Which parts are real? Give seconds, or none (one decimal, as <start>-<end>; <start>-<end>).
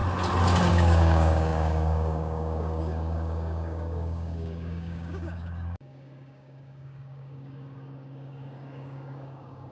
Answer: 0.0-0.7